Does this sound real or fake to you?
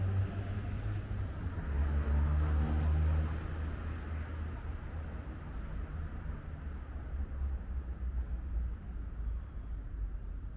real